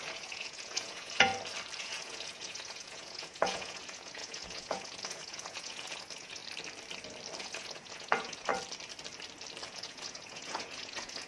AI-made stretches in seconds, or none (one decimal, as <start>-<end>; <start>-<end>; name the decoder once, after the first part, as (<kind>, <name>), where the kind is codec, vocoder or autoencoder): 0.0-1.3 (vocoder, Vocos); 1.8-6.4; 7.4-8.5; 9.7-11.3